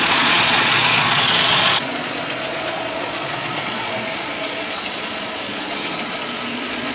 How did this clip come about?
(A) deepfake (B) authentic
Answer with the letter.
A